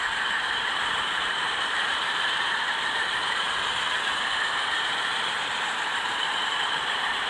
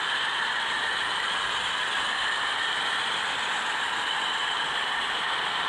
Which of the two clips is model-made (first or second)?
first